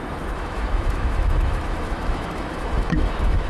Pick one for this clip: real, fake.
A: fake